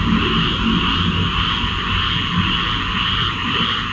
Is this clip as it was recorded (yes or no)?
yes